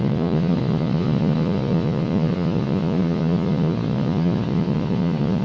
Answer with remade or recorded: remade